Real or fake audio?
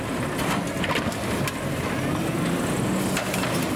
real